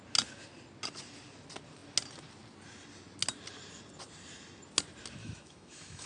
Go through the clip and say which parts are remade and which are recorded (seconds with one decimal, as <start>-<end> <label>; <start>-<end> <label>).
0.0-5.2 recorded; 5.2-6.1 remade